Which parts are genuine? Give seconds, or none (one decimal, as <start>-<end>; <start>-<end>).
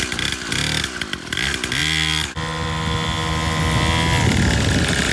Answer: 0.0-5.1